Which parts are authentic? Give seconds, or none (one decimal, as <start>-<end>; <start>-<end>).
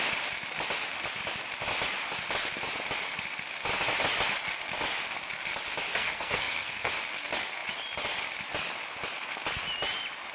0.0-5.9; 6.9-10.3